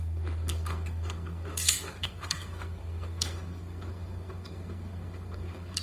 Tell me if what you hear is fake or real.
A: fake